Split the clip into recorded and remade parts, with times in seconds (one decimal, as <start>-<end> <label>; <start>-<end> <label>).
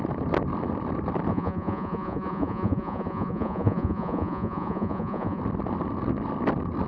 0.0-1.3 recorded; 1.3-5.4 remade; 5.4-6.9 recorded